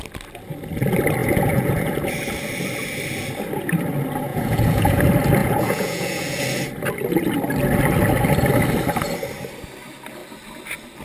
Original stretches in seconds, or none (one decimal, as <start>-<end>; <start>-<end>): 0.0-1.2; 2.1-4.3; 5.0-5.4; 6.4-11.0